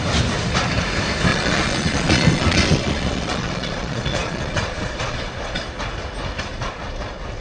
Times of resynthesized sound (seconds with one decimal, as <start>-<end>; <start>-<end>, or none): 1.3-5.6; 6.5-7.4